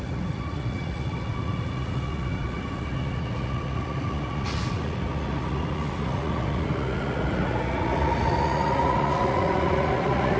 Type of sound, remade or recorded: remade